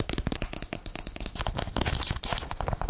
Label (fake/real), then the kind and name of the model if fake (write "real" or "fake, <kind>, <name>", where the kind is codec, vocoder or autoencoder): real